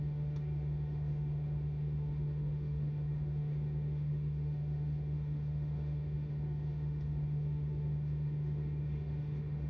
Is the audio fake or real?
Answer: fake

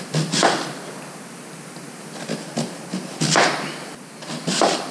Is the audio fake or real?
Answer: real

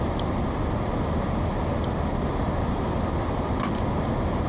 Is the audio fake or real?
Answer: real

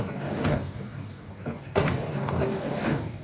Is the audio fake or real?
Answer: fake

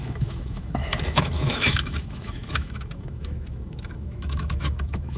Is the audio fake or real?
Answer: fake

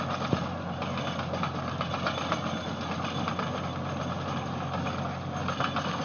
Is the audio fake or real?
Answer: real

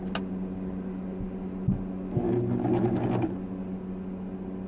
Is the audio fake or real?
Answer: real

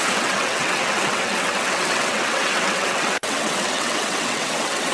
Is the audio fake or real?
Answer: fake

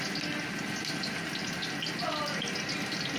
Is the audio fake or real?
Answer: real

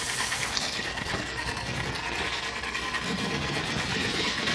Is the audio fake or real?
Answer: fake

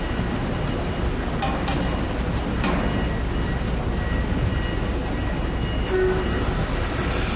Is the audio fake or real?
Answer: real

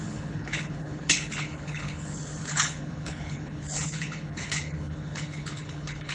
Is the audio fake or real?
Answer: fake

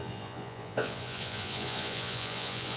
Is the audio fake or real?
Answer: fake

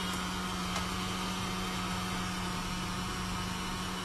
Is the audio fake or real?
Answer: real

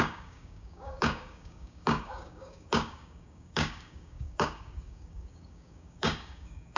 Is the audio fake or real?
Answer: fake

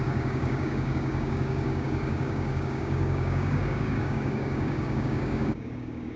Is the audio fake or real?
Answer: fake